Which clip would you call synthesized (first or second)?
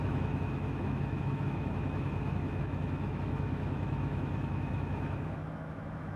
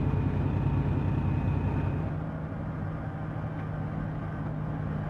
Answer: first